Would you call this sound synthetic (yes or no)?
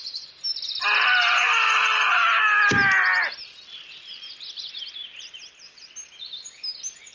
no